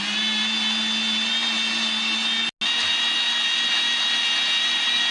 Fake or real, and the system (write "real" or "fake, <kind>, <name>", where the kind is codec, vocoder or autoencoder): real